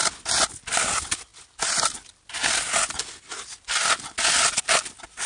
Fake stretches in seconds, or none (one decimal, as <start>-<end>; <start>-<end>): none